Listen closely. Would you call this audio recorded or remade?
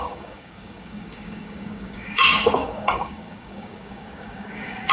remade